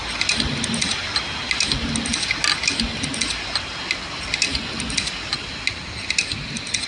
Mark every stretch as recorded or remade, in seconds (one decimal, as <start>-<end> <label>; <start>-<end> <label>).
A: 0.0-6.9 recorded